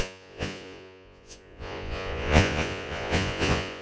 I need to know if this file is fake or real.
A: fake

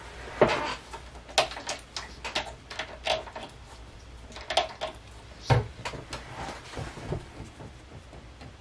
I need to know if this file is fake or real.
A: real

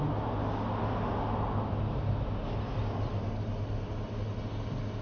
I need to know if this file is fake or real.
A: real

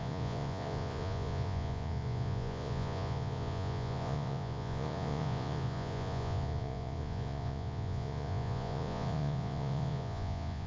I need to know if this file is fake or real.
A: fake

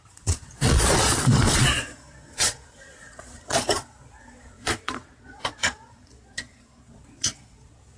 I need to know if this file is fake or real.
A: fake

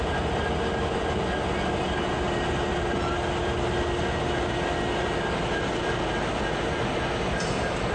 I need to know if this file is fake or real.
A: real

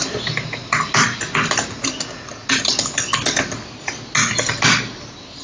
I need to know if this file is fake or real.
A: real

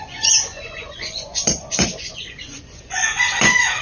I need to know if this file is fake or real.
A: fake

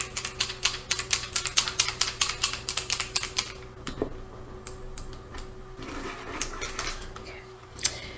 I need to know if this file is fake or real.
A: real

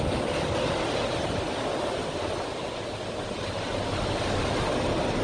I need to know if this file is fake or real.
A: real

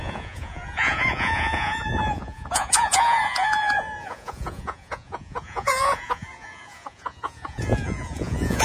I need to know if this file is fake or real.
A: fake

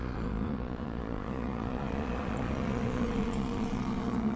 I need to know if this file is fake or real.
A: fake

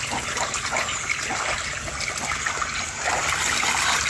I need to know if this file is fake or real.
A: real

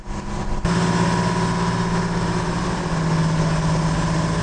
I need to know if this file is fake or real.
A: real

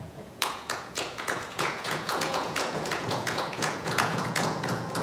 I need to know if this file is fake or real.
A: fake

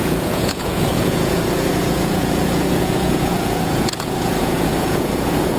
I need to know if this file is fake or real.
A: fake